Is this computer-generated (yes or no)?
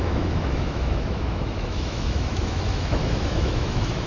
yes